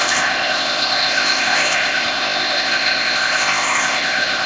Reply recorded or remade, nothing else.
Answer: remade